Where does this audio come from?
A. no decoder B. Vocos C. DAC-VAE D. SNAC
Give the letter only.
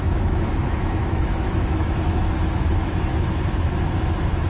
C